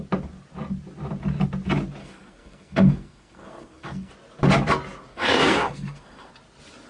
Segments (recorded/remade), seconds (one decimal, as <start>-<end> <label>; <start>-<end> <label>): 0.0-2.0 recorded; 2.0-4.1 remade; 4.1-5.1 recorded; 5.1-6.3 remade; 6.3-6.9 recorded

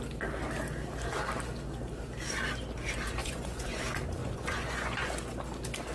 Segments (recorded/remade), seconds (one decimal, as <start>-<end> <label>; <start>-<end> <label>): 0.0-3.2 recorded; 3.2-3.8 remade; 3.8-4.2 recorded; 4.2-5.1 remade; 5.1-5.9 recorded

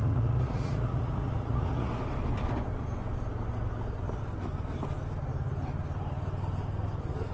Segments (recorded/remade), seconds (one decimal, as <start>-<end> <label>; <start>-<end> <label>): 0.0-1.9 remade; 1.9-7.3 recorded

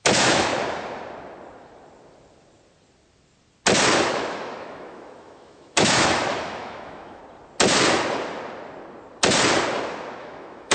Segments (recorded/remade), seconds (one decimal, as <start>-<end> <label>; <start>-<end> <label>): 0.0-0.5 remade; 0.5-4.1 recorded; 4.1-7.2 remade; 7.2-10.2 recorded; 10.2-10.7 remade